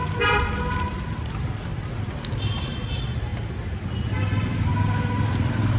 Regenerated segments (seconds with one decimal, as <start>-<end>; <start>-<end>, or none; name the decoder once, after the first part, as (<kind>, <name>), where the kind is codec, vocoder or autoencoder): none